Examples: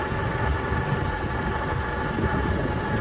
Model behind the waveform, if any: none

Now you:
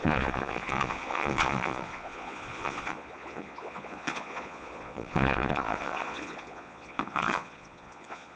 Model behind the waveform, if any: vocoder, Vocos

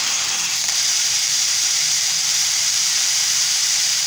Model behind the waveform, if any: vocoder, BigVGAN v2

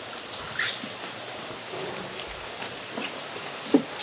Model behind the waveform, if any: none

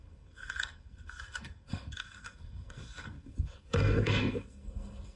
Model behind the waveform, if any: codec, SNAC